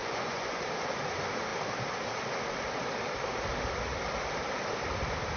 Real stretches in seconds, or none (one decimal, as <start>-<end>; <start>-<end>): 0.6-5.4